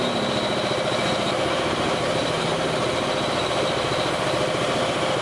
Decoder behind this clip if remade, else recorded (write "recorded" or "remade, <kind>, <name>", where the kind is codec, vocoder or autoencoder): recorded